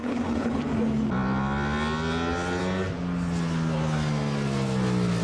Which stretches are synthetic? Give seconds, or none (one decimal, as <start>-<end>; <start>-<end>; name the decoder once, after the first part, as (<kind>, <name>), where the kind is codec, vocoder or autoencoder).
0.0-0.6 (codec, HILCodec)